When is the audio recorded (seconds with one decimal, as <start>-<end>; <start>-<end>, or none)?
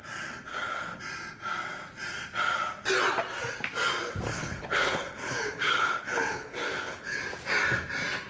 0.0-0.5; 1.0-4.3; 7.2-8.3